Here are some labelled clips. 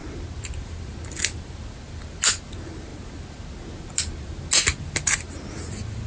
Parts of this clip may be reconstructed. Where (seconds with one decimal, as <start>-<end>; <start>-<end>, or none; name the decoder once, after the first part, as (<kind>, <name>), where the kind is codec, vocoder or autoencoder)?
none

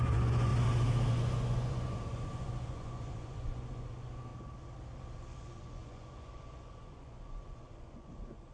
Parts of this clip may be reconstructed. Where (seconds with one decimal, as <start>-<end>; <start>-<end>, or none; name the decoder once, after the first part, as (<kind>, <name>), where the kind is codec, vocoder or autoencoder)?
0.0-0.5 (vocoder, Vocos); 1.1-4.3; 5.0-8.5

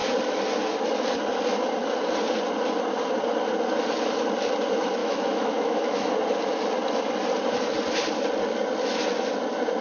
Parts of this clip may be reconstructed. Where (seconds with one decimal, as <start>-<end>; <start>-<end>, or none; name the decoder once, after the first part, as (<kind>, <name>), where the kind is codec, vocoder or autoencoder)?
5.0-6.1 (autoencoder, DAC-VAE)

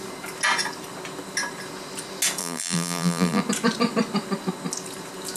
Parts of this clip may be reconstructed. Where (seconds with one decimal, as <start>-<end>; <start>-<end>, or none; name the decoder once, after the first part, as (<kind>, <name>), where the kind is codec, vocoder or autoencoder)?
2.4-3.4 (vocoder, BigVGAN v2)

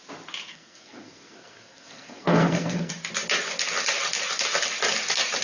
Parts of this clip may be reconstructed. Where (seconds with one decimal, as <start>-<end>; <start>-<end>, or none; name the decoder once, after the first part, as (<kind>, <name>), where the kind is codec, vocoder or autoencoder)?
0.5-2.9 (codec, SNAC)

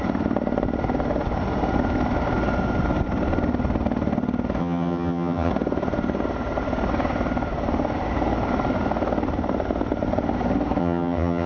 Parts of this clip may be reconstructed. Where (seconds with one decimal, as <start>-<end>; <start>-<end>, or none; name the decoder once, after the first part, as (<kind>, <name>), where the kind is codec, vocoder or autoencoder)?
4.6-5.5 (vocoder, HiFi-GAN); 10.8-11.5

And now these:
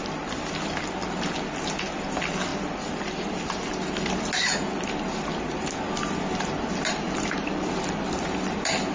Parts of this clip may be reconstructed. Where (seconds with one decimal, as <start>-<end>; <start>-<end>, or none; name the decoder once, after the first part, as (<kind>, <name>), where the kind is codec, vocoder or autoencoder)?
none

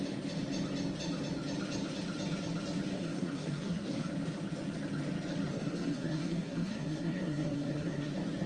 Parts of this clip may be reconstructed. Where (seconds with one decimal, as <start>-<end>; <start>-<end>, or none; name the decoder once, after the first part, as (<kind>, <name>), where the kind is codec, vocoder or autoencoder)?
2.9-4.1 (codec, SNAC); 5.5-8.1